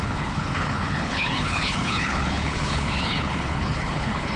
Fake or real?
fake